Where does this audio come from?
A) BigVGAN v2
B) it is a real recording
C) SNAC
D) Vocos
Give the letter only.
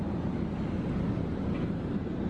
B